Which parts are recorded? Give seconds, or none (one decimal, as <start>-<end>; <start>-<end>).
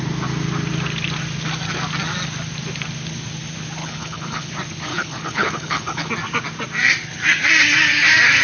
0.0-3.8; 4.5-4.9; 6.1-8.4